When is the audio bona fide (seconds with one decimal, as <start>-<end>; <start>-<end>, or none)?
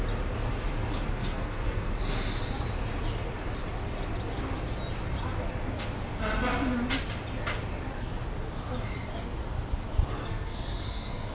0.0-1.2; 1.9-10.2